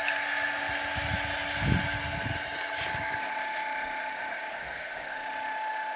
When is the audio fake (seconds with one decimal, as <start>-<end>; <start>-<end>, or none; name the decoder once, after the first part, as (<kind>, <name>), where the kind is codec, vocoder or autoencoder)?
3.2-6.0 (autoencoder, DAC-VAE)